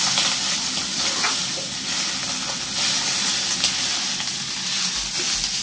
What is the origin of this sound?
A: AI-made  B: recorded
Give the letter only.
B